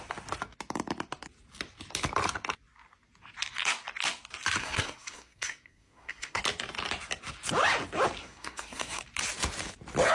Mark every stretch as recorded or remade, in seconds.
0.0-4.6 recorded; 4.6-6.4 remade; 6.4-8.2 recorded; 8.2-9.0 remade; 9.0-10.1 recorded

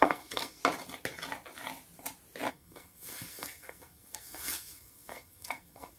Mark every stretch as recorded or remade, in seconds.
0.0-0.6 remade; 0.6-2.5 recorded; 2.5-6.0 remade

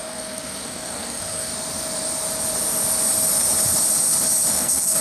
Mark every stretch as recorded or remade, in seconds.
0.0-1.5 remade; 1.5-4.5 recorded; 4.5-5.0 remade

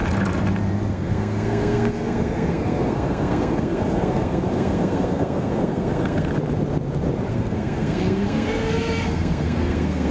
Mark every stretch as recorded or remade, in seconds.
0.0-0.9 recorded; 0.9-6.3 remade; 6.3-7.3 recorded; 7.3-10.1 remade

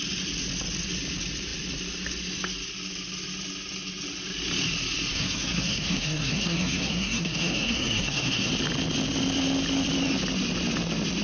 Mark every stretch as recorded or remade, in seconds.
0.0-5.1 recorded; 5.1-8.5 remade; 8.5-11.2 recorded